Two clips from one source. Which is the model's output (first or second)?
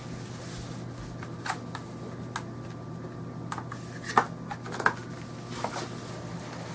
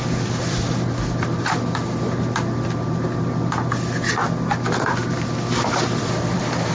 second